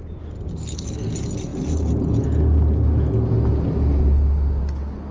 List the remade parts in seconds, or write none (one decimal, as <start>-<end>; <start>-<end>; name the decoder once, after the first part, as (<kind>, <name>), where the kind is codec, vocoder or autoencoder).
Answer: none